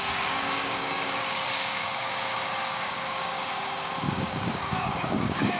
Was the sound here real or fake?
fake